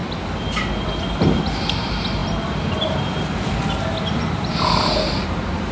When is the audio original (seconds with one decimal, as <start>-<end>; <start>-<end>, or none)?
0.0-5.7